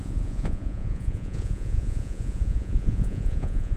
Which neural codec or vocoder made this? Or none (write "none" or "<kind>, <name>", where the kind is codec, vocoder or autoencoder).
vocoder, Vocos